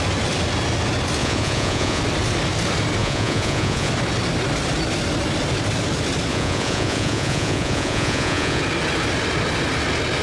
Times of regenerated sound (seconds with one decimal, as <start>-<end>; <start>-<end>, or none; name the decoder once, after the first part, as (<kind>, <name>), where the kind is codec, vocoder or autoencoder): 1.2-2.0 (vocoder, Vocos); 3.0-3.9; 6.3-8.6